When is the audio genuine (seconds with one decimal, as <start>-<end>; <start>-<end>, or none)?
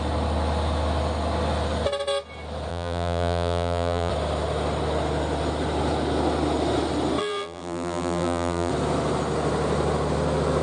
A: 0.0-2.7; 4.1-7.2; 8.7-10.6